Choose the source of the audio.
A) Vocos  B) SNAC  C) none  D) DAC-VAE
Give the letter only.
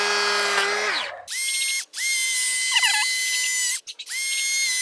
C